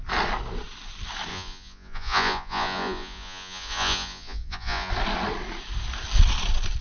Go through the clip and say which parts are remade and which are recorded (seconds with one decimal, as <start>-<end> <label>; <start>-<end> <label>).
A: 0.0-1.3 recorded; 1.3-4.9 remade; 4.9-6.8 recorded